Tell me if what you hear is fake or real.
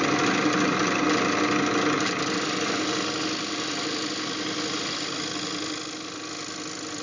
real